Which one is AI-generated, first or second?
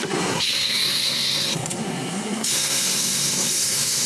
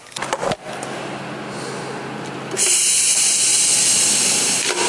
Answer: first